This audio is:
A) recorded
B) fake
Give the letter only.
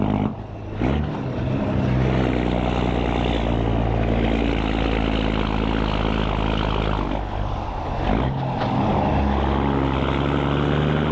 A